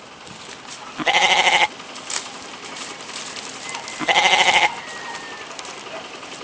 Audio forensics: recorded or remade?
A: recorded